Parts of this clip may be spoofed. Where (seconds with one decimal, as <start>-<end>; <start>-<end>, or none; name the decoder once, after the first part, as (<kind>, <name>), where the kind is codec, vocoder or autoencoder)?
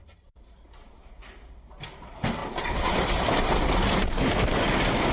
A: 0.0-2.4 (vocoder, BigVGAN v2); 4.0-5.1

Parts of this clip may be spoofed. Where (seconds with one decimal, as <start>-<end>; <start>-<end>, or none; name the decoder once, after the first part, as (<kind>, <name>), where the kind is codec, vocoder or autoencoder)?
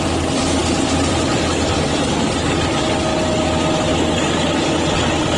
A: none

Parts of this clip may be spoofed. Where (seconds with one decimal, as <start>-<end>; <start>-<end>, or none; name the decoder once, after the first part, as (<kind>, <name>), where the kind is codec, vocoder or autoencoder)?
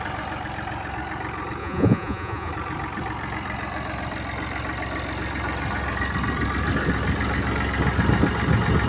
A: 1.6-2.5 (vocoder, Vocos)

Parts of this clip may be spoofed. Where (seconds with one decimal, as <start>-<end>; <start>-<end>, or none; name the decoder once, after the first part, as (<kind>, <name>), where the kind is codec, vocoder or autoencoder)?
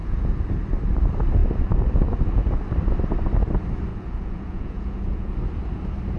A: 0.0-0.5 (vocoder, Vocos); 3.9-5.3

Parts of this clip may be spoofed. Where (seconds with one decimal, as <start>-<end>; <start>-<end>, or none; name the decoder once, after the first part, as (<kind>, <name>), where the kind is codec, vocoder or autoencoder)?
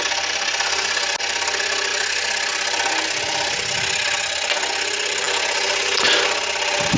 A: none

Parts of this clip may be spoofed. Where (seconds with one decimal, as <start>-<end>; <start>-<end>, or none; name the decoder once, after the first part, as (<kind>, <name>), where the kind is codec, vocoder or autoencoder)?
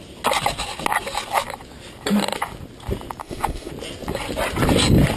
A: 3.2-3.7 (autoencoder, DAC-VAE)